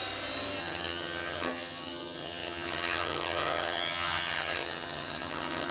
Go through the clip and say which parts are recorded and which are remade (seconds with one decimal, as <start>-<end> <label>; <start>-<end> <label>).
0.0-0.6 recorded; 0.6-5.7 remade